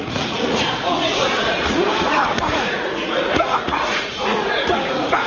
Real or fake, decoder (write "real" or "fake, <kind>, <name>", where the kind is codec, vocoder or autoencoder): fake, vocoder, Vocos